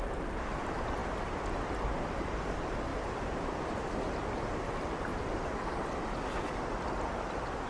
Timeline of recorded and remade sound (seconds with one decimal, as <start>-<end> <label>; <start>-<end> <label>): 0.0-5.1 recorded; 5.1-5.9 remade; 5.9-7.7 recorded